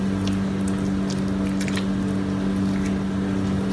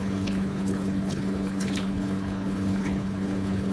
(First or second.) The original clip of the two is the first